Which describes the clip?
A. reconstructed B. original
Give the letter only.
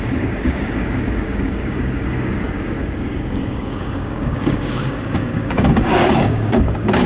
A